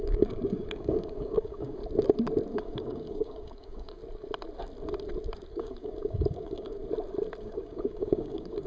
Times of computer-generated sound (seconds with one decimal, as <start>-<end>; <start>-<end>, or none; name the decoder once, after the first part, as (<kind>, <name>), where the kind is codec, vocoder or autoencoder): 0.0-1.8 (codec, DAC); 2.5-4.0; 5.5-6.8; 7.4-8.7

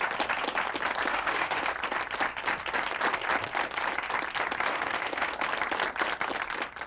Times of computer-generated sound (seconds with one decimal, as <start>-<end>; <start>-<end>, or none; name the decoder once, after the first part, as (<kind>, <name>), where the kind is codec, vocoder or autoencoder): 1.1-1.6 (autoencoder, DAC-VAE); 4.7-5.4

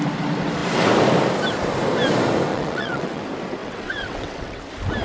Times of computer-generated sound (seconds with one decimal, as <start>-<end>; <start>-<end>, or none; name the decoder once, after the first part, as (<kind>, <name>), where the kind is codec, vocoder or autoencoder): 2.5-3.2 (vocoder, WaveNeXt); 3.6-4.6

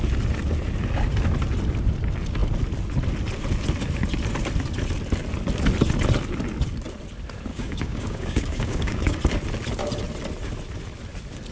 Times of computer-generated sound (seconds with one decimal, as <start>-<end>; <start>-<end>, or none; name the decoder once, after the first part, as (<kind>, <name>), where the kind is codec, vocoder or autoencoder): 7.5-9.2 (codec, DAC)

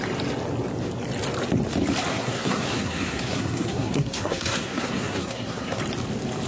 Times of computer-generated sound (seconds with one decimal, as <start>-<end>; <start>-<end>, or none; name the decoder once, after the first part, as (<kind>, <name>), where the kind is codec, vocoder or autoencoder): 2.1-5.8 (codec, SNAC)

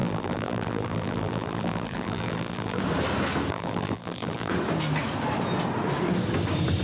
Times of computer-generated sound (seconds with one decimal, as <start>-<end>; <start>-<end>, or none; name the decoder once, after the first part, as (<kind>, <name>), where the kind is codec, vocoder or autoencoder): 0.0-2.8 (vocoder, BigVGAN v2); 3.5-4.5